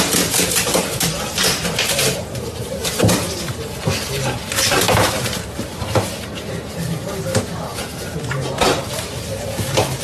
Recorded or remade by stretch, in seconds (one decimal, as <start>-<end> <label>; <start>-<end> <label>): 0.0-4.4 remade; 4.4-5.2 recorded; 5.2-10.0 remade